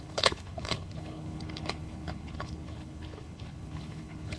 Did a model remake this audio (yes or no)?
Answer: yes